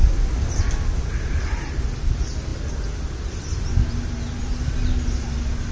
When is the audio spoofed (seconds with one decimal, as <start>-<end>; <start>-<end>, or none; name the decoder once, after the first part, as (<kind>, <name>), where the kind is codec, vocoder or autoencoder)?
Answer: none